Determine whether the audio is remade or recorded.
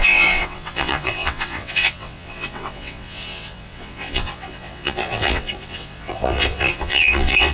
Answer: remade